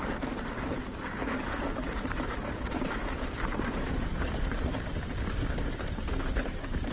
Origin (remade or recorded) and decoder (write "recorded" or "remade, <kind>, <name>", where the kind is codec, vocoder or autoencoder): remade, vocoder, BigVGAN v2